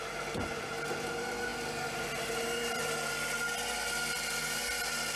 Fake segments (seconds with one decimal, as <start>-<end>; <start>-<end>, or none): none